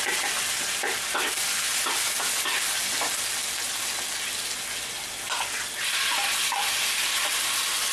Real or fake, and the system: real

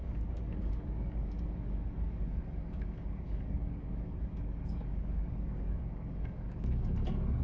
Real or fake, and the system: fake, codec, DAC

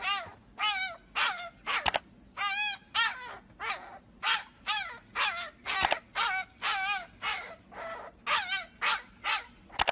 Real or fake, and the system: real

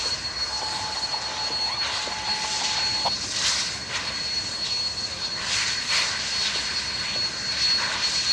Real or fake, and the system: real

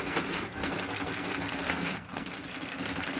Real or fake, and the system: fake, codec, SNAC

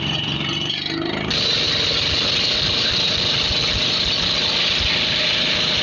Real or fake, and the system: real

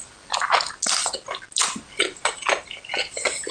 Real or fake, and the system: real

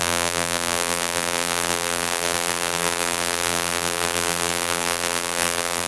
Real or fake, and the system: fake, vocoder, BigVGAN v2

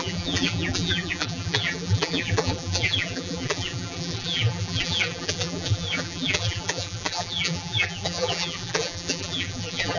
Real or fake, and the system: fake, vocoder, BigVGAN v2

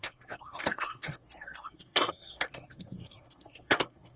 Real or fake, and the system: fake, codec, SNAC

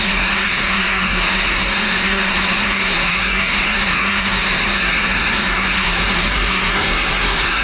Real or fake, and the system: fake, codec, SNAC